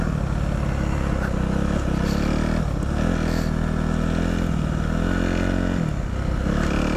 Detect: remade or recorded recorded